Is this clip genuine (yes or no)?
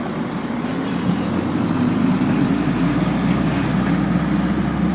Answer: yes